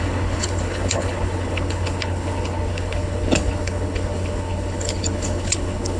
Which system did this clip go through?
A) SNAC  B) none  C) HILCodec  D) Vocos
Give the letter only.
C